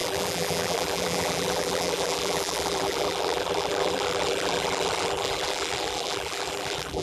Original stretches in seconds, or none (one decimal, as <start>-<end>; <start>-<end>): none